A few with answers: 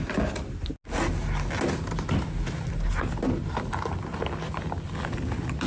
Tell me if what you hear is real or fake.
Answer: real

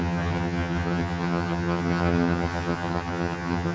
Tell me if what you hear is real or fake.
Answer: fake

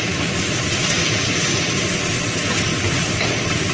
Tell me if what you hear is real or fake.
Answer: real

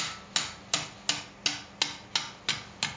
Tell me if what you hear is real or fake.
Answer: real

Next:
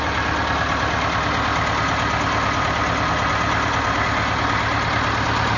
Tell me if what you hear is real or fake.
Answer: real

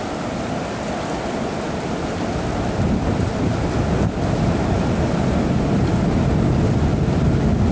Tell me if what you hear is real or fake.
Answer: real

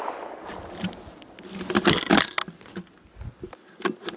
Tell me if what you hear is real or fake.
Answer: real